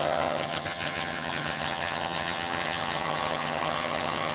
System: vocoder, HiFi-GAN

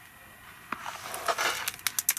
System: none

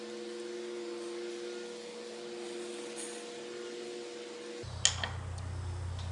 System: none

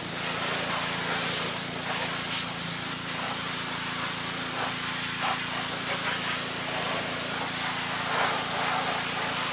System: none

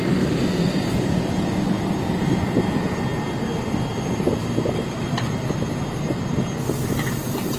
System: none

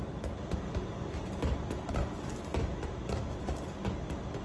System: none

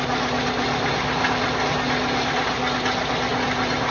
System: none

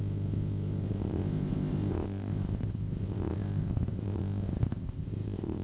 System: codec, ZipCodec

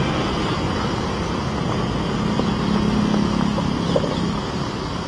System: none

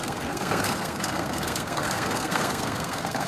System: codec, SNAC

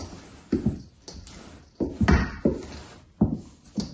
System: none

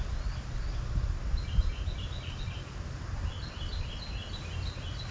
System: none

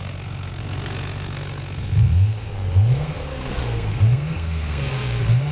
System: codec, SNAC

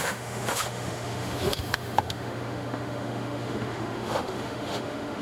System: autoencoder, DAC-VAE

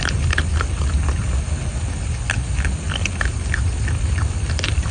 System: none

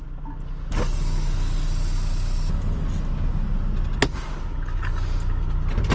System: none